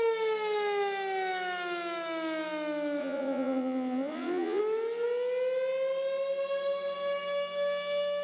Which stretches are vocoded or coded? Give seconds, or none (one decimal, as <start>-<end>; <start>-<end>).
3.0-4.6